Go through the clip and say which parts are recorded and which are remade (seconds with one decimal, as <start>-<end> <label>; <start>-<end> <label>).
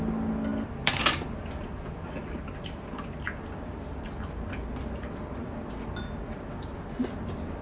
0.0-0.5 recorded; 0.5-1.5 remade; 1.5-7.6 recorded